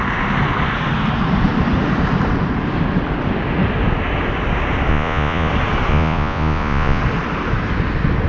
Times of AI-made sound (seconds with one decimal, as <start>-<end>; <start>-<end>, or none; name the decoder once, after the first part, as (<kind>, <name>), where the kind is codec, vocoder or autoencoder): 4.9-5.5 (vocoder, Vocos); 5.9-7.0